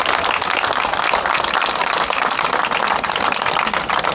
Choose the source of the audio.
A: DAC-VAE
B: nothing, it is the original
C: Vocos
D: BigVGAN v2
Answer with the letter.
B